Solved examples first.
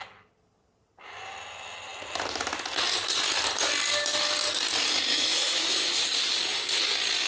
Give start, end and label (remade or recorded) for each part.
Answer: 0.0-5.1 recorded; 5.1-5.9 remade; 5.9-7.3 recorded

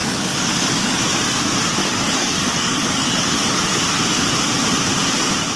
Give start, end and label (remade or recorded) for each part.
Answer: 0.0-1.0 remade; 1.0-1.8 recorded; 1.8-3.6 remade; 3.6-5.6 recorded

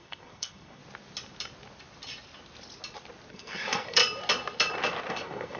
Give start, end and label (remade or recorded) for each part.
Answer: 0.0-0.8 remade; 0.8-3.3 recorded; 3.3-4.0 remade; 4.0-5.1 recorded; 5.1-5.6 remade

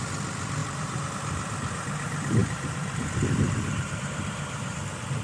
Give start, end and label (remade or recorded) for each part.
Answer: 0.0-0.6 recorded; 0.6-1.1 remade; 1.1-2.4 recorded; 2.4-4.8 remade; 4.8-5.2 recorded

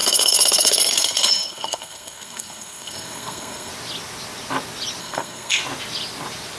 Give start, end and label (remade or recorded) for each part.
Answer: 0.0-3.7 remade; 3.7-5.0 recorded; 5.0-5.6 remade; 5.6-6.6 recorded

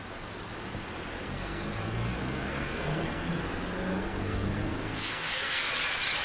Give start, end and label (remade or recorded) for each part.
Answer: 0.0-1.2 recorded; 1.2-3.4 remade; 3.4-3.9 recorded; 3.9-5.7 remade; 5.7-6.2 recorded